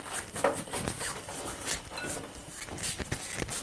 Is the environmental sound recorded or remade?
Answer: recorded